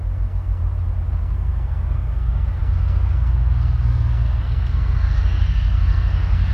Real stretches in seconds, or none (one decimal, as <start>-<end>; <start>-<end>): 0.6-1.1